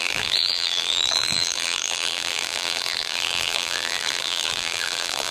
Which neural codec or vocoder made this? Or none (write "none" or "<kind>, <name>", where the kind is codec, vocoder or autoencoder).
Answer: vocoder, BigVGAN v2